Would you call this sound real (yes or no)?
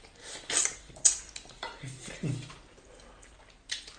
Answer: no